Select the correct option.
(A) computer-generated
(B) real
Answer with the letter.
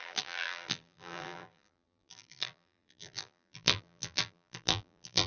A